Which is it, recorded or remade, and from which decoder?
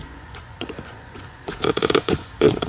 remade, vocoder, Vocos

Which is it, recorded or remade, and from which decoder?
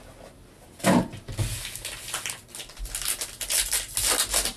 recorded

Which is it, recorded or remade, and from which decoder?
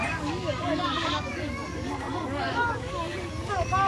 remade, codec, DAC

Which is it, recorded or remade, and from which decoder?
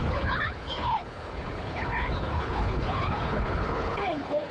remade, codec, HILCodec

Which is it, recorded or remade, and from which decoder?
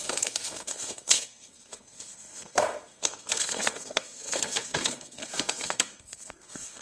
remade, codec, SNAC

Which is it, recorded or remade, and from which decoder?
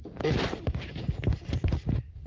remade, vocoder, BigVGAN v2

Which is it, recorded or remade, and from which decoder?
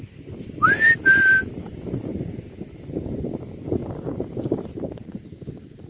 remade, vocoder, BigVGAN v2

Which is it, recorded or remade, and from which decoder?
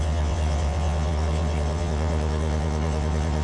remade, vocoder, WaveNeXt